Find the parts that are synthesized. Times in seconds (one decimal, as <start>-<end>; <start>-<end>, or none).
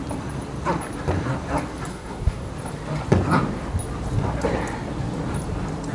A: 1.9-2.5